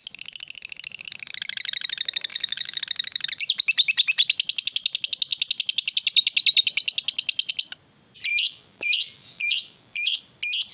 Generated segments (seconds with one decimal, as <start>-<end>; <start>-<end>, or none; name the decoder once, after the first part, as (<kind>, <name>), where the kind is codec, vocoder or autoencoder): 2.3-2.8 (vocoder, BigVGAN v2); 8.3-10.2